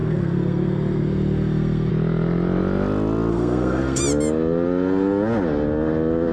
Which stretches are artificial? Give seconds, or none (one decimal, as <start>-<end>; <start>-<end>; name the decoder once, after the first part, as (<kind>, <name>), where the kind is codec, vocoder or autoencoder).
0.0-1.9 (codec, SNAC); 3.3-4.0